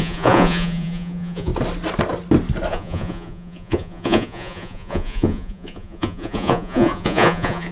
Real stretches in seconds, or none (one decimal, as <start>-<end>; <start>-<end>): 1.5-2.7